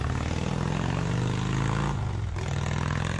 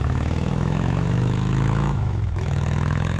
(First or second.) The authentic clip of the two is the first